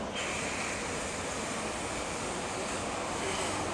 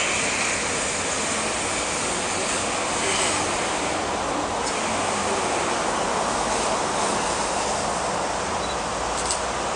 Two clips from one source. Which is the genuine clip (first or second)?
second